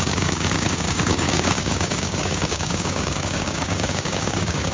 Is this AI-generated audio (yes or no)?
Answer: yes